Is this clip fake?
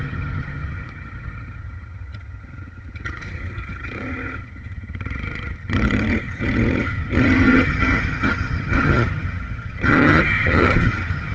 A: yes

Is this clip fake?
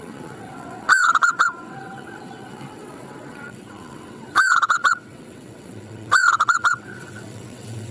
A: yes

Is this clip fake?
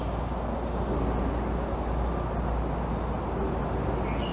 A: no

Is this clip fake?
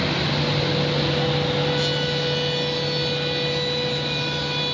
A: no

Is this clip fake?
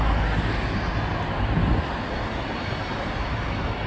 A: no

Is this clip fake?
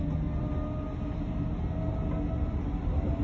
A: no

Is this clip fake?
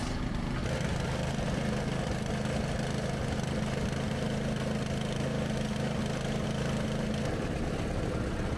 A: no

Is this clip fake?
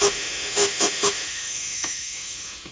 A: yes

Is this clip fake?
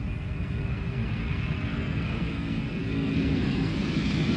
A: yes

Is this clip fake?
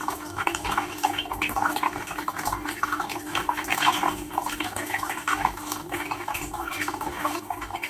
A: yes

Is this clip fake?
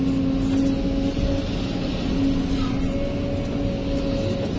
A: no